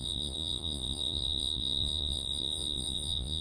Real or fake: fake